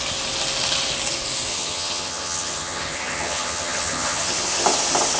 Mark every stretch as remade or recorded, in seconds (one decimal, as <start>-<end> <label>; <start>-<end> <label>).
0.0-1.5 recorded; 1.5-4.6 remade; 4.6-5.2 recorded